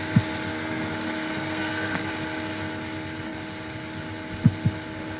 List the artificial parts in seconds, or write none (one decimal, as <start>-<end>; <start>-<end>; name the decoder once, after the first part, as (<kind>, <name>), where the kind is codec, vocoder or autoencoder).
0.5-2.1 (codec, SNAC)